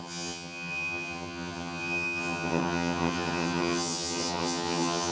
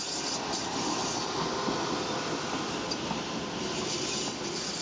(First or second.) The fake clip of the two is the first